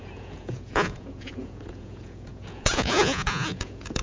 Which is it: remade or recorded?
remade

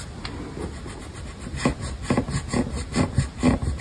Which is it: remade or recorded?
recorded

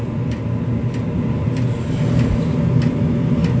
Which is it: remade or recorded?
recorded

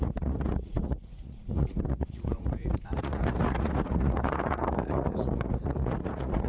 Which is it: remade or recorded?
remade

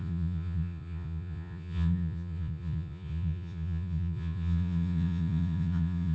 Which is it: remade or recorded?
remade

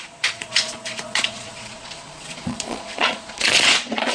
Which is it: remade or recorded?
remade